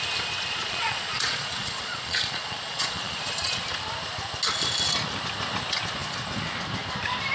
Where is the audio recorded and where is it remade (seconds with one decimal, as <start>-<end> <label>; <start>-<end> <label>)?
0.0-0.6 recorded; 0.6-3.6 remade; 3.6-7.3 recorded